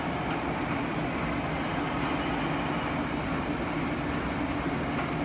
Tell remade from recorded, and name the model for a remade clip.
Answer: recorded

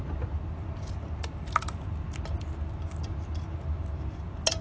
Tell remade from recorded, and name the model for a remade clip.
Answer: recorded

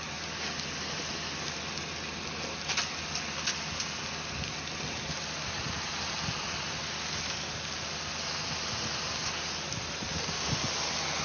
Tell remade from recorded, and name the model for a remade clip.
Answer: recorded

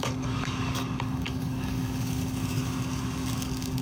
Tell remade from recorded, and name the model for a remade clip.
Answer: remade, codec, DAC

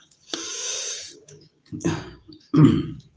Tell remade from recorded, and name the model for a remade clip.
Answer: remade, codec, DAC